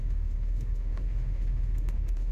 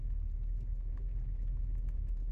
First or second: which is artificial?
first